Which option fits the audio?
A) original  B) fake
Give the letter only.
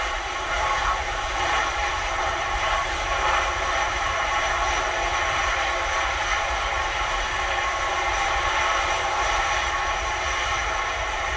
B